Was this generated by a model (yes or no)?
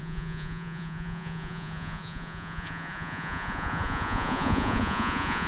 yes